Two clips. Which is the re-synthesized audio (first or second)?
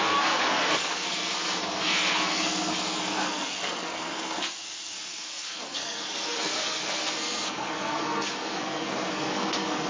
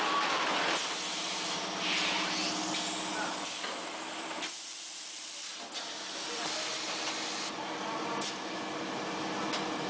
first